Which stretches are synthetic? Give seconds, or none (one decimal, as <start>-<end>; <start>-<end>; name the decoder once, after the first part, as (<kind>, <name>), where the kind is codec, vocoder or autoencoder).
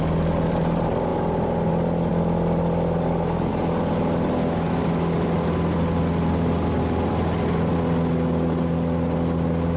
none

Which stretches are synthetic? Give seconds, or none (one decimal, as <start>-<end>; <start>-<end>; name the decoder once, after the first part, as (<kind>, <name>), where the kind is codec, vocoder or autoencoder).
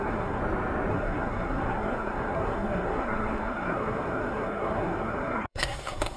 0.0-0.4 (codec, SNAC); 0.9-6.2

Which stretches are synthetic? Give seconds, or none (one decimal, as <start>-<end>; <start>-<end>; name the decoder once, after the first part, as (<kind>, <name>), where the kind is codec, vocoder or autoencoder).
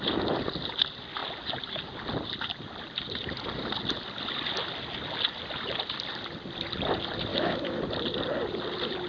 7.3-7.8 (autoencoder, DAC-VAE)